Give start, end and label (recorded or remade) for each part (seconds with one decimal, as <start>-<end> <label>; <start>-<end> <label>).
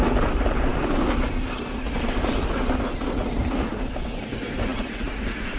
0.0-4.7 recorded; 4.7-5.6 remade